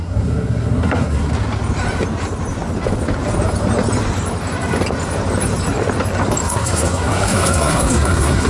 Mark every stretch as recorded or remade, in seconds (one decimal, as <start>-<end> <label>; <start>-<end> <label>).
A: 0.0-1.3 remade; 1.3-6.4 recorded; 6.4-8.5 remade